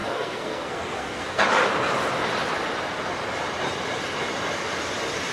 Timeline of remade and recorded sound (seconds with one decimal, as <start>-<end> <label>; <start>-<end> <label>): 0.0-1.5 remade; 1.5-5.3 recorded